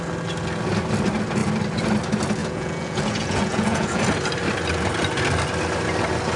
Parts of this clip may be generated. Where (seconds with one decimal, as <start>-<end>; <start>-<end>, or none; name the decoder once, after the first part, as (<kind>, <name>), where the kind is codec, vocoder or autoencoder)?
2.4-4.0 (vocoder, Vocos)